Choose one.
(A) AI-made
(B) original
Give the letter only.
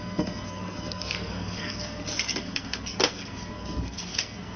A